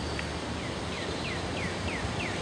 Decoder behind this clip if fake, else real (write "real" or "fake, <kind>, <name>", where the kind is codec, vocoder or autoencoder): real